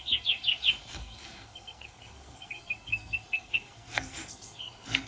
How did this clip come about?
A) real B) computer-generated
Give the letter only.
B